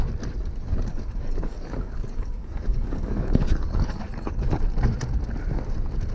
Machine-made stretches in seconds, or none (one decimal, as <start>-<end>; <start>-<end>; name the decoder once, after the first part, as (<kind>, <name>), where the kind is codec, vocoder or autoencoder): 0.9-4.6 (codec, DAC)